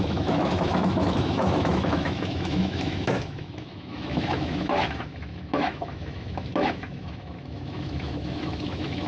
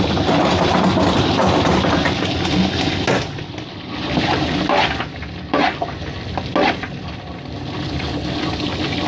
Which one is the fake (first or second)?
first